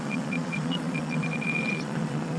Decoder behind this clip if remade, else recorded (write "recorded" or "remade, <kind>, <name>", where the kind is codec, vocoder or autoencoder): remade, vocoder, Vocos